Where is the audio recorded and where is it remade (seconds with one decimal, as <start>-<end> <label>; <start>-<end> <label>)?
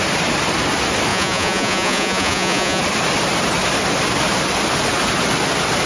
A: 0.0-1.1 recorded; 1.1-2.8 remade; 2.8-5.9 recorded